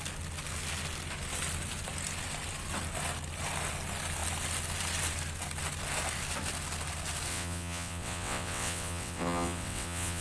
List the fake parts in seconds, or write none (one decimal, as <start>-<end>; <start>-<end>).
7.3-10.2